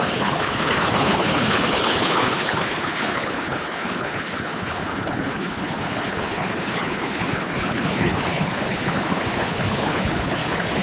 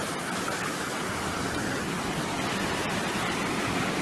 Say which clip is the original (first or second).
second